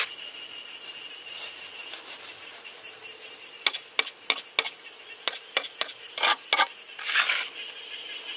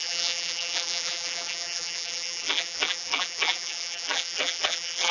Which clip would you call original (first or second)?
first